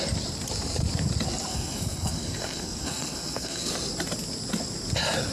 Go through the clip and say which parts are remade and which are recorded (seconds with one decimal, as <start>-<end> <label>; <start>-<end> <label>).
0.0-1.5 recorded; 1.5-3.7 remade; 3.7-5.3 recorded